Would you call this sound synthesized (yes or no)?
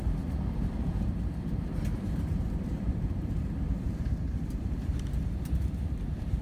yes